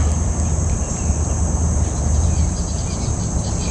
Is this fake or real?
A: fake